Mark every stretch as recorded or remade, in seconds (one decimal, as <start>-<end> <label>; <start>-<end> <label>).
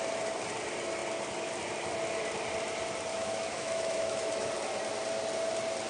0.0-3.1 recorded; 3.1-4.5 remade; 4.5-5.9 recorded